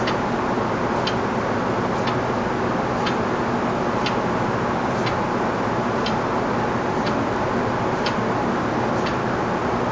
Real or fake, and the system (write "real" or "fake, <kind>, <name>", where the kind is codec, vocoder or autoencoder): real